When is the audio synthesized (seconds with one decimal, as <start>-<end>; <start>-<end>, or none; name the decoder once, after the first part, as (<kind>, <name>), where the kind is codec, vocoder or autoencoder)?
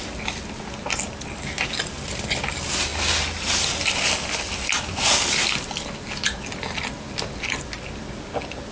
none